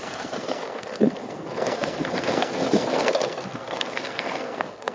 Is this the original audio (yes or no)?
no